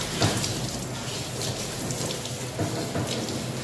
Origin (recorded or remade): recorded